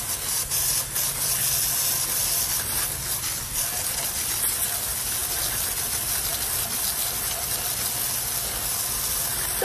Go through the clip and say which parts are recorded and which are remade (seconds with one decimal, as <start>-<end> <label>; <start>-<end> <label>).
0.0-9.6 recorded